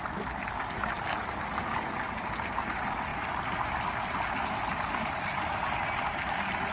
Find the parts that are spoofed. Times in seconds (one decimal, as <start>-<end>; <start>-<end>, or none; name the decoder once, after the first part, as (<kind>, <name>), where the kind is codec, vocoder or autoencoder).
none